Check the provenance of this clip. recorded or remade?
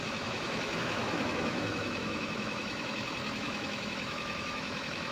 remade